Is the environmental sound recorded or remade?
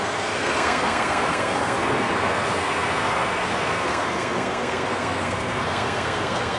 remade